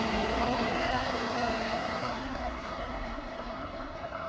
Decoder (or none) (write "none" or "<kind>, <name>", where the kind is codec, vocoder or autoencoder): codec, SNAC